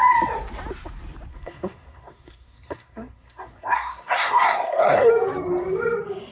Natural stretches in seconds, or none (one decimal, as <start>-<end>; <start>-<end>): 0.0-1.3; 5.1-6.3